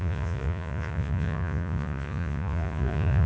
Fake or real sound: fake